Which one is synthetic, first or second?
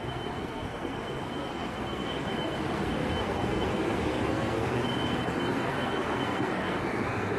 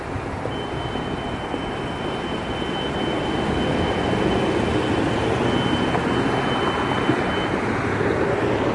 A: first